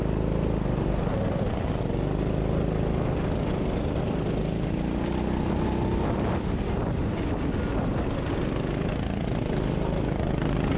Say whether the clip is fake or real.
real